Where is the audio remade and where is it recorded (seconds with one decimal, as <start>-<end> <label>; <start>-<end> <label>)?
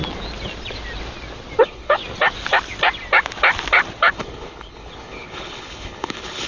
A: 0.0-1.6 recorded; 1.6-2.0 remade; 2.0-4.1 recorded; 4.1-6.5 remade